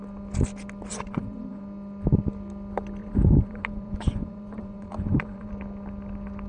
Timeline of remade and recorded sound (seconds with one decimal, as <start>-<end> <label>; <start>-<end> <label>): 0.0-0.9 recorded; 0.9-1.6 remade; 1.6-3.0 recorded; 3.0-5.5 remade; 5.5-6.5 recorded